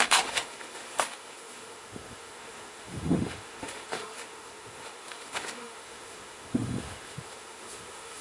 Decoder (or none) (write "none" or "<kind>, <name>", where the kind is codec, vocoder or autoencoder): autoencoder, DAC-VAE